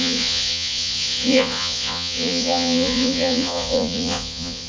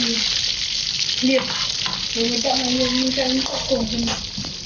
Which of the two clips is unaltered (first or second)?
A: second